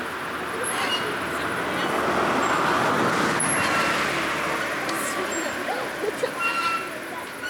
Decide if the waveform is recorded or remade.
recorded